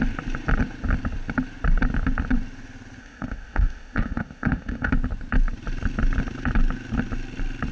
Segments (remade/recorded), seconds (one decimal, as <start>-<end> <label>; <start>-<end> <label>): 0.0-3.0 recorded; 3.0-4.9 remade; 4.9-7.7 recorded